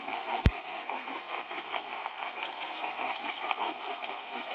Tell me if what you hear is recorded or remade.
remade